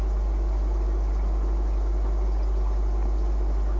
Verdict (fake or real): real